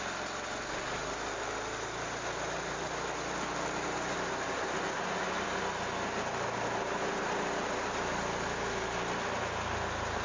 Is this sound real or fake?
real